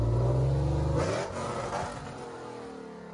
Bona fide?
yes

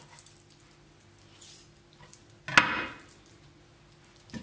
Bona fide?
yes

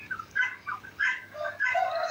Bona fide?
no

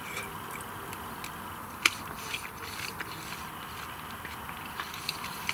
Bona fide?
yes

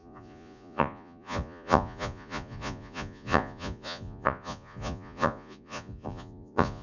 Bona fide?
no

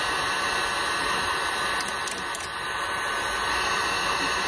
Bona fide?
yes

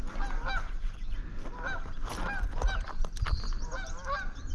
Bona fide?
yes